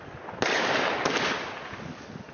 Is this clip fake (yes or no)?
no